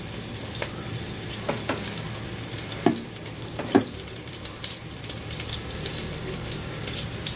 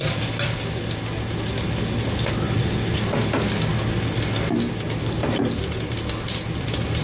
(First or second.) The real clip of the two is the second